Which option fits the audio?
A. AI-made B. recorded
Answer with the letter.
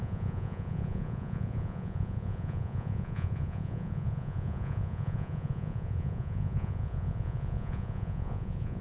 A